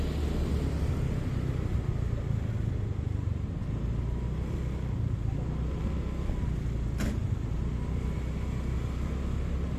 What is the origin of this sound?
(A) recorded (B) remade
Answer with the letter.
A